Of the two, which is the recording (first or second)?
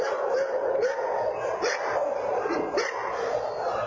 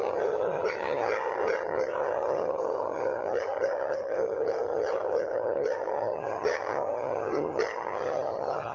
first